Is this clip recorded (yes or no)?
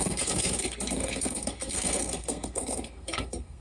no